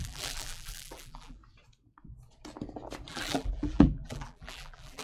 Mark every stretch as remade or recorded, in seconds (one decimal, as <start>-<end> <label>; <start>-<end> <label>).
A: 0.0-1.4 remade; 1.4-3.1 recorded; 3.1-5.0 remade